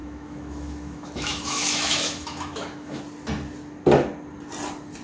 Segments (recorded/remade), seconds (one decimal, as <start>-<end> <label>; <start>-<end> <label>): 0.0-3.0 remade; 3.0-5.0 recorded